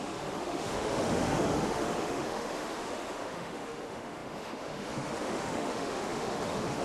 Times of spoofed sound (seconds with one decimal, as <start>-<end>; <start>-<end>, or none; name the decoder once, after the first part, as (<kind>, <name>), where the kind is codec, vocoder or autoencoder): 0.0-6.8 (autoencoder, DAC-VAE)